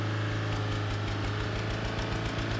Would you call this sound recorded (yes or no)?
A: yes